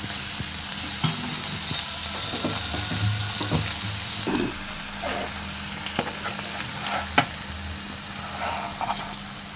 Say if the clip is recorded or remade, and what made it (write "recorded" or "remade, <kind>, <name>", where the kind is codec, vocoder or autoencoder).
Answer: recorded